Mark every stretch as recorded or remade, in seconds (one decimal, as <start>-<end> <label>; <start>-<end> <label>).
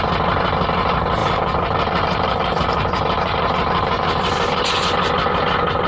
0.0-1.2 recorded; 1.2-4.7 remade; 4.7-5.9 recorded